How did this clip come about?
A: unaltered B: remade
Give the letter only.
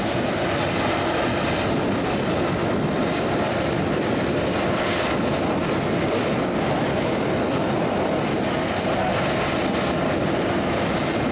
A